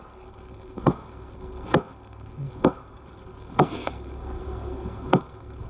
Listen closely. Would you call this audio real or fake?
fake